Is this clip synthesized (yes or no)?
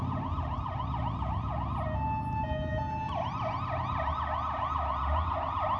no